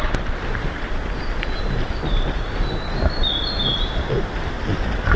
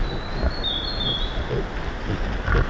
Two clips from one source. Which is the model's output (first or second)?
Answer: first